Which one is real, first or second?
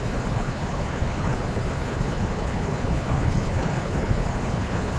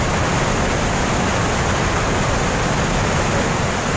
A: second